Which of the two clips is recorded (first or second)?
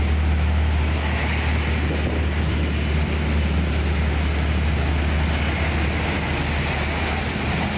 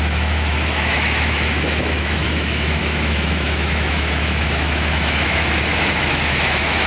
first